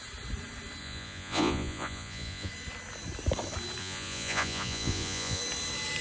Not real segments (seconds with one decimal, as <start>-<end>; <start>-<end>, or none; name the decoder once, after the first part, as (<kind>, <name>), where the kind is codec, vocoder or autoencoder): 0.8-2.5 (vocoder, Vocos); 3.8-5.4